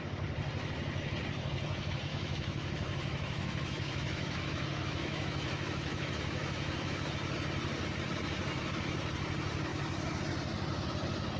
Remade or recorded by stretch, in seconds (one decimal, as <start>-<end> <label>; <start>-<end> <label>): 0.0-2.1 recorded; 2.1-7.1 remade; 7.1-11.4 recorded